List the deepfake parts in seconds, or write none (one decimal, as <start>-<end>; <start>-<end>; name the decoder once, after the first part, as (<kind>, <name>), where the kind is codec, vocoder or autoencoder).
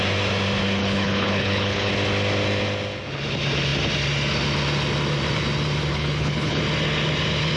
0.8-1.9 (codec, HILCodec); 5.9-6.6